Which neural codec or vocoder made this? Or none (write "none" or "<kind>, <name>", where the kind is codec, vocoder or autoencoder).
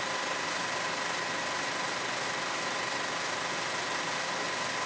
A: none